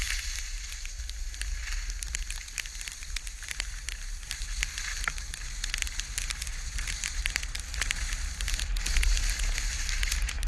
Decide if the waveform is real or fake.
real